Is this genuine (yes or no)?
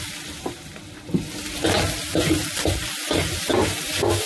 yes